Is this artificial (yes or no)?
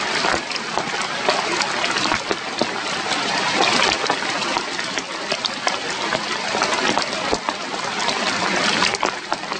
no